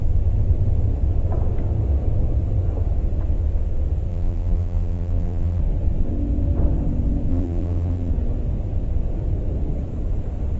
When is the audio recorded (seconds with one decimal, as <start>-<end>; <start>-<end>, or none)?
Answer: 0.0-4.1; 5.6-7.3; 8.1-10.6